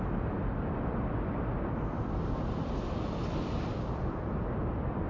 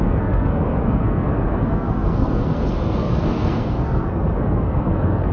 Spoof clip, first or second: second